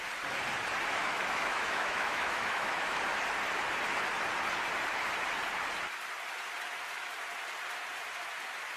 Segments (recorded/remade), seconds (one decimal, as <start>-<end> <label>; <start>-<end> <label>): 0.0-1.0 recorded; 1.0-3.0 remade; 3.0-8.8 recorded